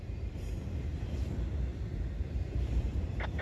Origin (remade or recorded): remade